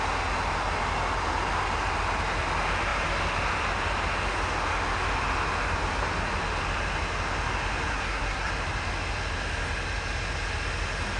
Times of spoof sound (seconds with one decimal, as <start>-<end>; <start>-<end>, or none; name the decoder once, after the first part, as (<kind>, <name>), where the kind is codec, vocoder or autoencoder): 7.9-8.5 (codec, SNAC)